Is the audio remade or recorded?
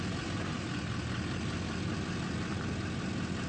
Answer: recorded